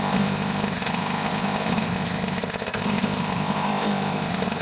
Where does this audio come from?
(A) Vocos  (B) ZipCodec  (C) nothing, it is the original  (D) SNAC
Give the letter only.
B